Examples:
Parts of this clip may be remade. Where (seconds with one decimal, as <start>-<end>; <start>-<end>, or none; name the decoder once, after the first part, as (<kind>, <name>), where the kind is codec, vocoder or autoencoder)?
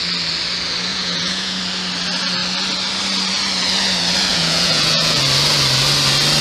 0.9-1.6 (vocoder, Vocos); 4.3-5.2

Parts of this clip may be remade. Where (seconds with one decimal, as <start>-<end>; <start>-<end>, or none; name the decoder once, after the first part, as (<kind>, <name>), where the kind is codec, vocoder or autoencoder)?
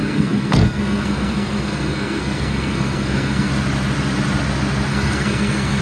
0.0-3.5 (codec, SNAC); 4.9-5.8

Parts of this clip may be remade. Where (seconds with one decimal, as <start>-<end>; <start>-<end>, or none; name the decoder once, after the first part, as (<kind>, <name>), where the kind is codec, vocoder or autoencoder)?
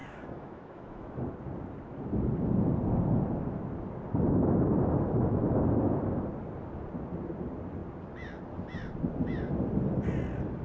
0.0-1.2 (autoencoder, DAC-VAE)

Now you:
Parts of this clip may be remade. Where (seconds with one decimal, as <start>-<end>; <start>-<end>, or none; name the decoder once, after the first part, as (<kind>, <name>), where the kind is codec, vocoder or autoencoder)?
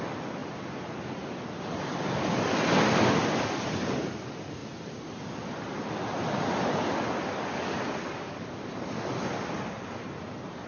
0.4-1.0 (vocoder, BigVGAN v2); 4.6-9.6